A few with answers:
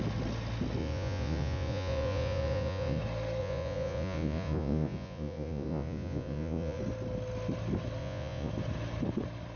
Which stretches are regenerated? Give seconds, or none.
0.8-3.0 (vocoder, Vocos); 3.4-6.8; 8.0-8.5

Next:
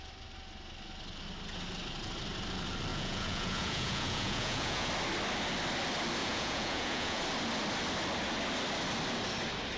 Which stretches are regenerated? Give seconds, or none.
2.9-4.9 (vocoder, Vocos); 6.2-7.2

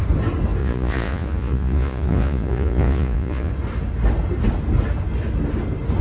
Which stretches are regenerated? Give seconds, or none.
0.6-3.5 (vocoder, Vocos)

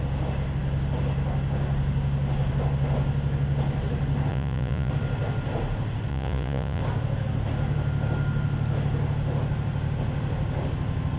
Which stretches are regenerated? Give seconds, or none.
4.3-4.9 (vocoder, Vocos); 6.1-6.8